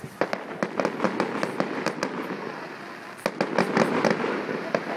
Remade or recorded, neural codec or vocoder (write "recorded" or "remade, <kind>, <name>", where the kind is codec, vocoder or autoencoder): recorded